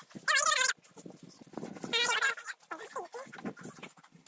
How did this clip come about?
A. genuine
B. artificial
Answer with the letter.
A